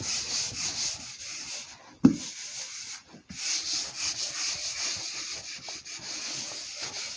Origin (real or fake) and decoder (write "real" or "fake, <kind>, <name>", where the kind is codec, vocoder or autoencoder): real